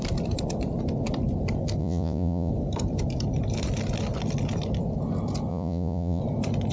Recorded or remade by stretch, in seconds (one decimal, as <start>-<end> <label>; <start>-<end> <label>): 0.0-1.8 recorded; 1.8-2.5 remade; 2.5-5.5 recorded; 5.5-6.2 remade; 6.2-6.7 recorded